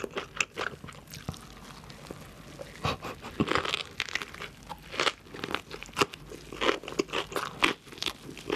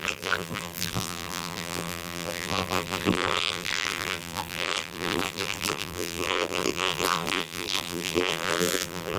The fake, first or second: second